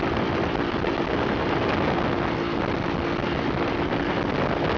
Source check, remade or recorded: recorded